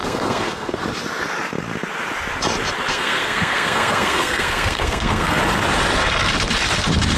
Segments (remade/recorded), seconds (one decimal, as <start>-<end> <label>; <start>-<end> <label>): 0.0-0.8 remade; 0.8-2.9 recorded; 2.9-5.4 remade; 5.4-7.2 recorded